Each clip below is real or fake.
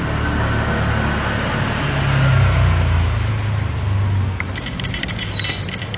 real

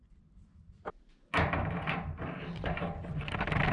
real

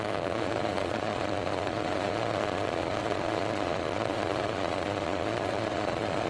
fake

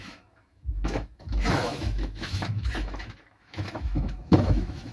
fake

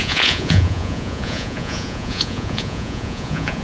fake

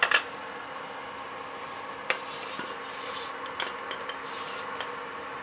real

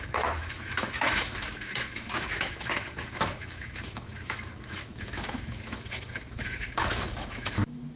fake